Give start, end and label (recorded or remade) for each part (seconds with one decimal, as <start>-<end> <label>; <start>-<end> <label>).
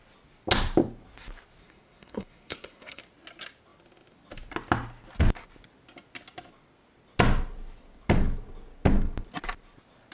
0.0-1.6 recorded; 1.6-3.0 remade; 3.0-10.1 recorded